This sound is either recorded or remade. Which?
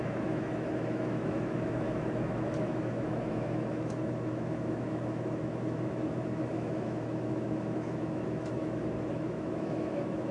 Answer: remade